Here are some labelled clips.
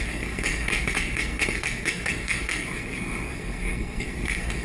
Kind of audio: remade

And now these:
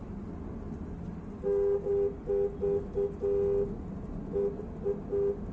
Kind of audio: recorded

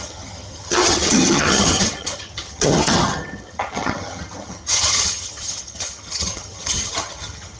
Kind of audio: remade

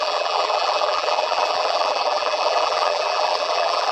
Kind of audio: remade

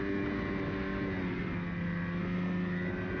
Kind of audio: recorded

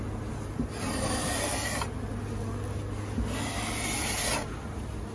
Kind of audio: recorded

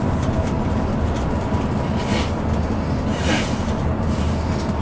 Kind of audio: recorded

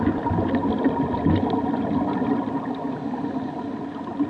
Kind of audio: recorded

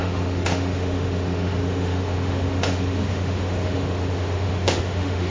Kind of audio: remade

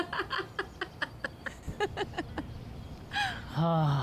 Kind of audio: recorded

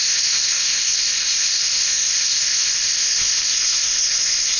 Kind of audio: remade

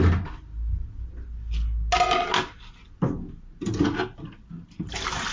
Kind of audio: recorded